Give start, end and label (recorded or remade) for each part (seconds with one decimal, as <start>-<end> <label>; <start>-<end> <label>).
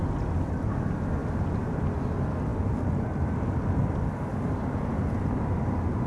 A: 0.0-6.1 recorded